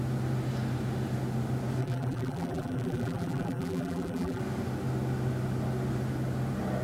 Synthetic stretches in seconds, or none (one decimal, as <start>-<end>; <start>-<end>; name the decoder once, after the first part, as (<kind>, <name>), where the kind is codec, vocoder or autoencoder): 1.8-4.4 (vocoder, BigVGAN v2)